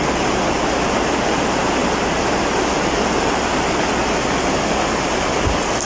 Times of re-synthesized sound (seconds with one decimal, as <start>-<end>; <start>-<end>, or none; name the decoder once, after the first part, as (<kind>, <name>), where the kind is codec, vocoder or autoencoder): 0.0-3.5 (vocoder, BigVGAN v2); 5.1-5.8